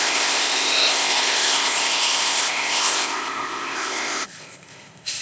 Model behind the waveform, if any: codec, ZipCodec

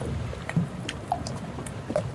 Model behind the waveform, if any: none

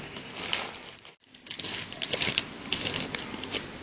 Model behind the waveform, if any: none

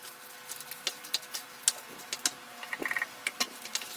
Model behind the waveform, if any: none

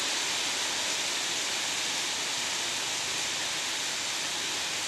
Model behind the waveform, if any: none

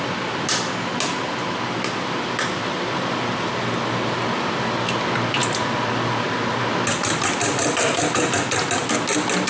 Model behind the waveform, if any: none